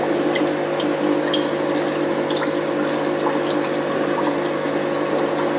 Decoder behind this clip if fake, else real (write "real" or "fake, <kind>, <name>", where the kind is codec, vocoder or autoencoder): real